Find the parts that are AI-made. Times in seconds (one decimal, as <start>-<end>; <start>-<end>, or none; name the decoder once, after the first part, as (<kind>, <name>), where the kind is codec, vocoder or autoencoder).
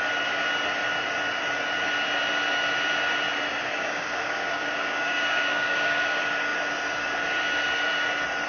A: 3.8-6.0 (codec, DAC)